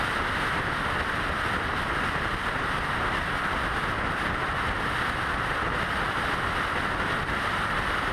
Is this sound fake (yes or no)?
no